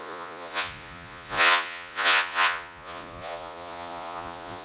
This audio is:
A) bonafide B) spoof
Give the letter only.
B